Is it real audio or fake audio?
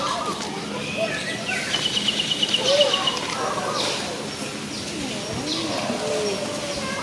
real